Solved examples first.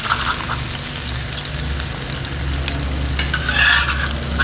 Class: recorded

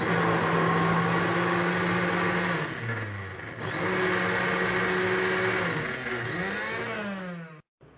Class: recorded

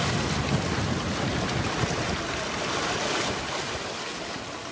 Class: recorded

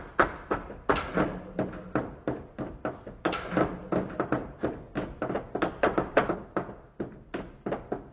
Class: recorded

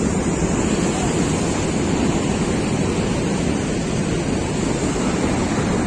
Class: recorded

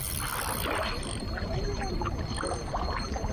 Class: recorded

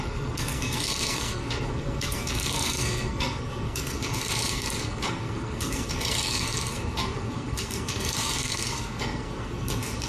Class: remade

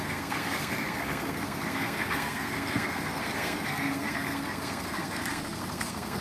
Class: remade